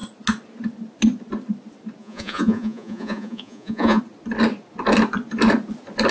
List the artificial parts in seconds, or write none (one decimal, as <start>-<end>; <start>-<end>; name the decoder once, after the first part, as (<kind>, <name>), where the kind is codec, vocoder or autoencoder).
2.0-4.0 (vocoder, Vocos)